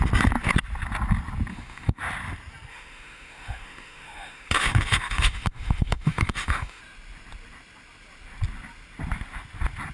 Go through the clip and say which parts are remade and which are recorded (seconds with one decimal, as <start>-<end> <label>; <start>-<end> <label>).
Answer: 0.0-1.5 recorded; 1.5-2.0 remade; 2.0-2.7 recorded; 2.7-6.8 remade; 6.8-9.9 recorded